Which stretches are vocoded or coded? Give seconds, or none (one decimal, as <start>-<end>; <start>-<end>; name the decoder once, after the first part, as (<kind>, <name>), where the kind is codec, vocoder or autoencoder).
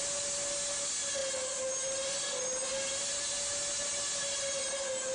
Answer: none